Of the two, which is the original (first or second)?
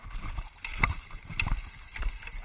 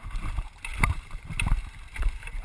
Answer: first